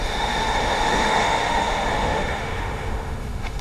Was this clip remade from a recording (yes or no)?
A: yes